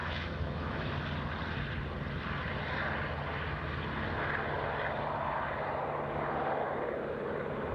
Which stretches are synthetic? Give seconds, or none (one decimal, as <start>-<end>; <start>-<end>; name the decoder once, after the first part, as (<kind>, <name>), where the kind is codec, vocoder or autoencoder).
0.0-0.8 (autoencoder, DAC-VAE)

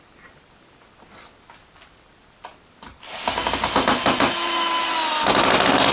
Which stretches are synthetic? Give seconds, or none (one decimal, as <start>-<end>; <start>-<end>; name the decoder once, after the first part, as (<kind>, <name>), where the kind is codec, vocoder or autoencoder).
none

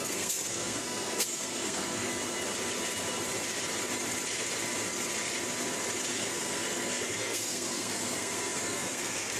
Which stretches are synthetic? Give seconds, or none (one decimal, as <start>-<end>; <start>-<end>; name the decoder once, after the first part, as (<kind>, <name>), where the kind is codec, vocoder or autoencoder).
0.0-2.1 (codec, SNAC); 6.1-9.4

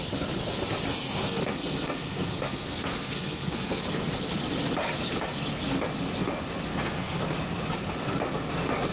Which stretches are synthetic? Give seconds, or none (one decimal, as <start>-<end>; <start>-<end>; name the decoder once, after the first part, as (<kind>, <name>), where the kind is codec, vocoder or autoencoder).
0.9-3.8 (codec, SNAC); 6.7-7.2

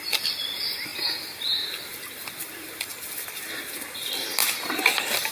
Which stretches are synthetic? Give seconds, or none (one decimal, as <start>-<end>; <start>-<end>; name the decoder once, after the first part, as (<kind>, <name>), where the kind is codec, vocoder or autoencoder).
0.0-0.9 (vocoder, BigVGAN v2); 1.7-4.4

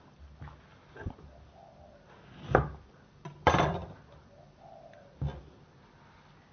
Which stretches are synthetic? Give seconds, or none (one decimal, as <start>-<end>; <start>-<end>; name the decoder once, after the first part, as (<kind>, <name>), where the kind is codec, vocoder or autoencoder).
none

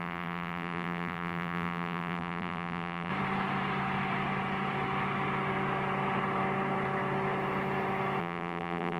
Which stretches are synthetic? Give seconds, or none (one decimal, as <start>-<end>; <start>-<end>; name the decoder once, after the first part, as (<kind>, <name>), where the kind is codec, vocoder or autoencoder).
0.0-3.1 (vocoder, BigVGAN v2); 8.2-9.0

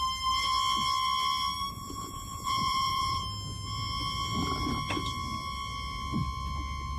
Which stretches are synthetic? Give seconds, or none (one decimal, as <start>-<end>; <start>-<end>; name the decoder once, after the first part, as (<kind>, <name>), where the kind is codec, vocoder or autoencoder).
1.7-3.2 (vocoder, Vocos)